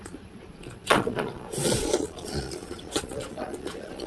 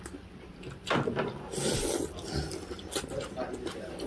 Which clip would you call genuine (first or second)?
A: second